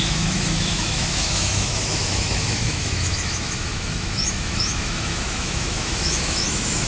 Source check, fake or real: fake